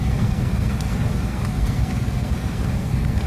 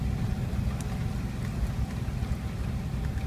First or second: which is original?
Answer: second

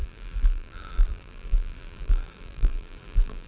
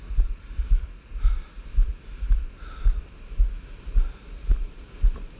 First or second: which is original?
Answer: second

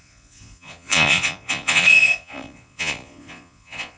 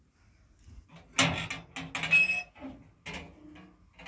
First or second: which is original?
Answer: second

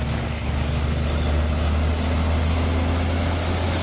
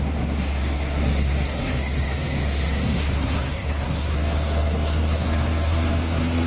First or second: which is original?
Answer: first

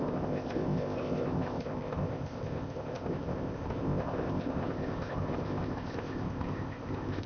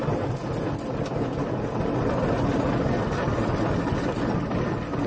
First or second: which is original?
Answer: second